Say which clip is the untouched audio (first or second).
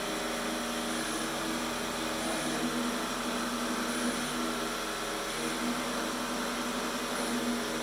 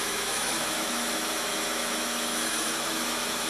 first